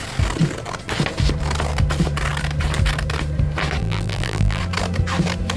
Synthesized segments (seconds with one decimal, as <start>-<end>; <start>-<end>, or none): 3.8-4.6